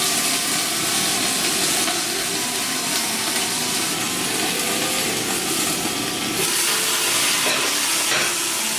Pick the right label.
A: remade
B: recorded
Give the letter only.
B